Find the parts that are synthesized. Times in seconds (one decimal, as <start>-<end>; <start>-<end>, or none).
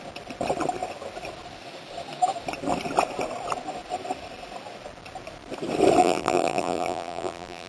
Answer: 6.0-7.7